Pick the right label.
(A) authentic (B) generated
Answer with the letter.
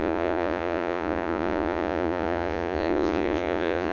B